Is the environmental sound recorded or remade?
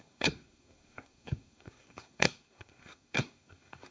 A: remade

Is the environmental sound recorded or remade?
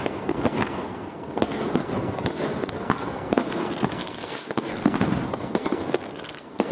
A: remade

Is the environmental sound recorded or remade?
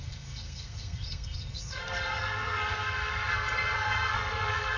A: remade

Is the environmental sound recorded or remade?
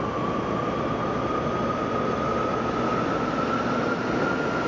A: recorded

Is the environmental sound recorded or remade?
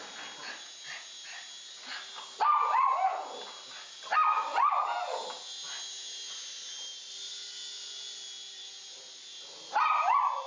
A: recorded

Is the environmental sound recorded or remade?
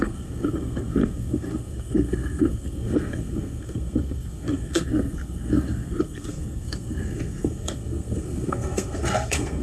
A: remade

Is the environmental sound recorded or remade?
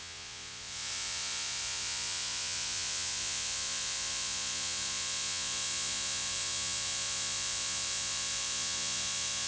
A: remade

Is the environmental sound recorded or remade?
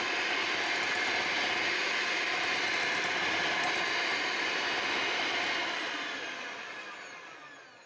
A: recorded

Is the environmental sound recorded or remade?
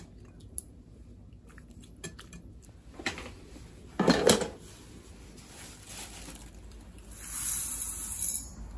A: recorded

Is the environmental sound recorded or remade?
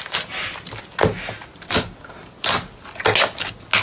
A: recorded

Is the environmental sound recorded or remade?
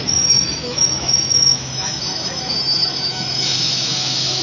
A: remade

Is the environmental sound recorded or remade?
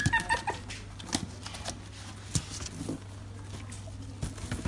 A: recorded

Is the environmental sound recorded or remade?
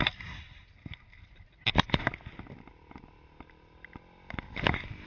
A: recorded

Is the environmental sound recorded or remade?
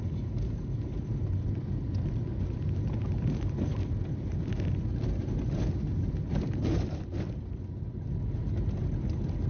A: recorded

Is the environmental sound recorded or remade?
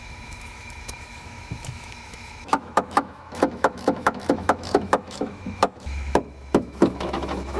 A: remade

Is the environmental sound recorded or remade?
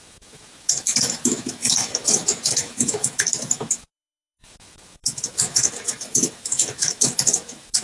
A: remade